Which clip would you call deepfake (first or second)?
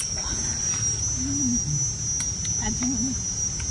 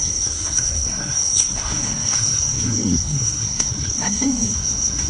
second